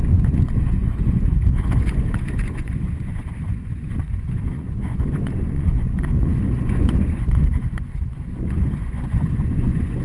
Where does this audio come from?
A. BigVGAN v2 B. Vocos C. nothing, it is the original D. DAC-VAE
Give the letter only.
B